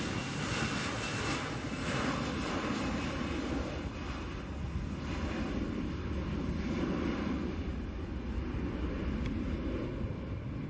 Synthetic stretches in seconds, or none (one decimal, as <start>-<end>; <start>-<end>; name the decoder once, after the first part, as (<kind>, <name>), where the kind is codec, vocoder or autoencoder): none